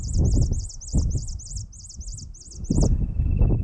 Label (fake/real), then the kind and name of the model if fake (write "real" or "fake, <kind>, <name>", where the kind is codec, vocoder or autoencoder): real